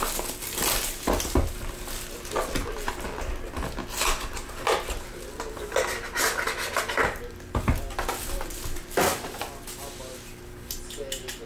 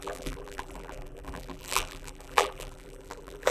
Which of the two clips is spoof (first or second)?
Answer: second